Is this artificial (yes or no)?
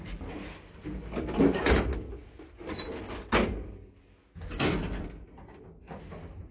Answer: no